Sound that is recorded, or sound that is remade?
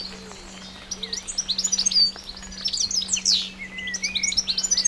recorded